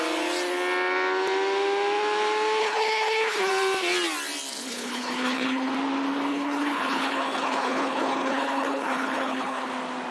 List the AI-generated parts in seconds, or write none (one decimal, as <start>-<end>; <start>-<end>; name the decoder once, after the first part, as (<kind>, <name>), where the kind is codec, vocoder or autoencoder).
2.6-3.5 (codec, HILCodec); 4.6-5.7; 6.3-9.7